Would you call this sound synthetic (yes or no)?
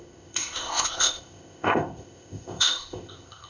yes